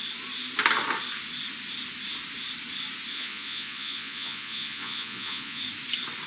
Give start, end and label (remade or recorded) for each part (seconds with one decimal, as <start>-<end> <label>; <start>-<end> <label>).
0.0-3.1 recorded; 3.1-5.6 remade; 5.6-6.3 recorded